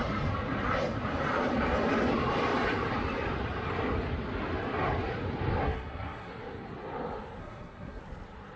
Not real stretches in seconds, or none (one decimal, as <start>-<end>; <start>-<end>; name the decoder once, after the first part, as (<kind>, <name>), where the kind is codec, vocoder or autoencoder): 5.6-6.3 (codec, SNAC); 7.4-8.0

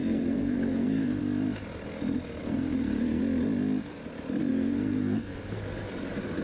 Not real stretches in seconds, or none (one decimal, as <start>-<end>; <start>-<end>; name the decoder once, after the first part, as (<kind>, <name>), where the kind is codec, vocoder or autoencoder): 0.0-1.2 (codec, SNAC); 2.4-3.2; 4.5-5.6

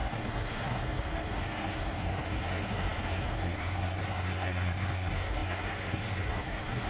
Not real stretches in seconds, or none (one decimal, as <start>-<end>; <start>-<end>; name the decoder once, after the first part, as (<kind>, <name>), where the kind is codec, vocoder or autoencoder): 0.0-6.9 (codec, SNAC)

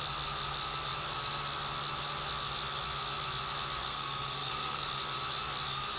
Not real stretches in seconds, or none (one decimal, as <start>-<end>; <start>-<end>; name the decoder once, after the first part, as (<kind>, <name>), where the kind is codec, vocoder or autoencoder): 3.8-4.9 (codec, SNAC)